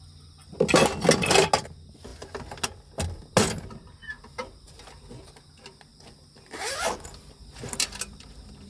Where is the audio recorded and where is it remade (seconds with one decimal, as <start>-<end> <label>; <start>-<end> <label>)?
0.0-5.9 recorded; 5.9-8.7 remade

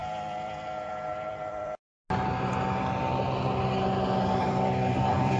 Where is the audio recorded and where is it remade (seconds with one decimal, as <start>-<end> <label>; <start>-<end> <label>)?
0.0-1.9 remade; 1.9-4.4 recorded; 4.4-5.4 remade

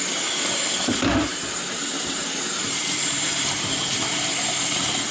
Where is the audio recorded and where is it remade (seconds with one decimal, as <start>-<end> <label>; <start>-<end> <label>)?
0.0-1.3 recorded; 1.3-4.2 remade; 4.2-5.1 recorded

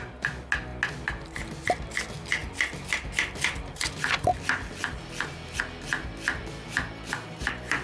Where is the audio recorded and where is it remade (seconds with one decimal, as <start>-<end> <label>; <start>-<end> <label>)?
0.0-7.8 recorded

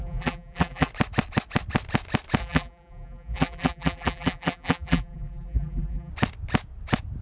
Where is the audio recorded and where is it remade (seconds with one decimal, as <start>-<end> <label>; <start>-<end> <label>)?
0.0-0.9 remade; 0.9-2.4 recorded; 2.4-6.1 remade; 6.1-7.2 recorded

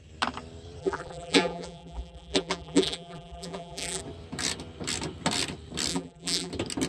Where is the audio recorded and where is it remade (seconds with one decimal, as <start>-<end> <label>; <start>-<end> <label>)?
0.0-0.8 recorded; 0.8-4.0 remade; 4.0-5.9 recorded; 5.9-6.5 remade; 6.5-6.9 recorded

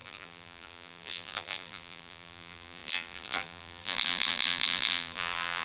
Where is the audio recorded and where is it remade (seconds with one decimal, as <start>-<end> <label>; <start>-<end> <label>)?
0.0-5.6 remade

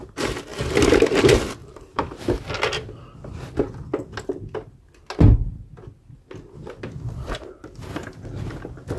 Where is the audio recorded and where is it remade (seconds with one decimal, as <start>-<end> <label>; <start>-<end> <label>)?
0.0-1.6 recorded; 1.6-2.2 remade; 2.2-9.0 recorded